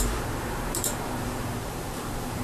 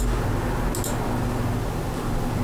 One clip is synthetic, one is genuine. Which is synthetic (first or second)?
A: first